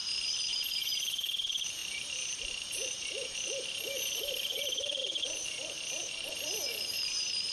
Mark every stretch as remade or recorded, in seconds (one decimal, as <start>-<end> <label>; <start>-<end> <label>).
0.0-0.5 recorded; 0.5-7.5 remade